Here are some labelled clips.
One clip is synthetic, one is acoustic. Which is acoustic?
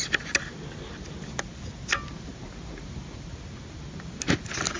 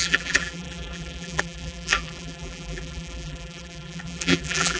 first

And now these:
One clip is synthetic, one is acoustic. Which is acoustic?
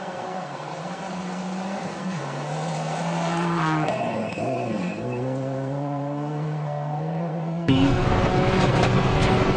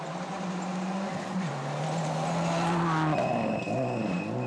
second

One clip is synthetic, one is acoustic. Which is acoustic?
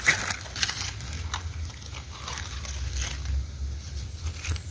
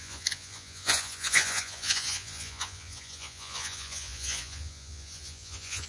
first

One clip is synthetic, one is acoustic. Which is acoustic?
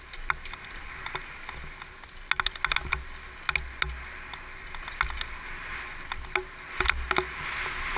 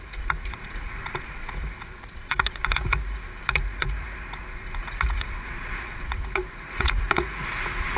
first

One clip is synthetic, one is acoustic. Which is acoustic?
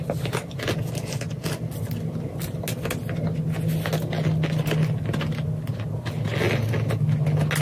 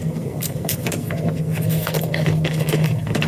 first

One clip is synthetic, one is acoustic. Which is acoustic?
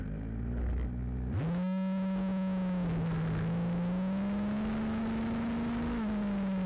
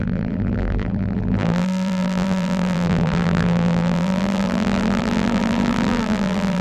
first